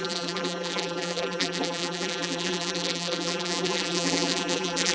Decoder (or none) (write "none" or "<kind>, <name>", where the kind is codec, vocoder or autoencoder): vocoder, BigVGAN v2